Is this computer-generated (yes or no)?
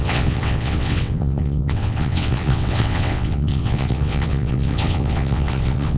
yes